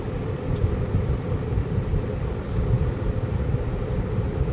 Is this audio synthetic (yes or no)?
no